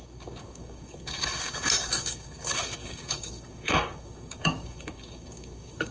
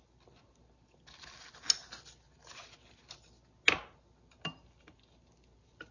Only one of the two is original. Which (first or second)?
second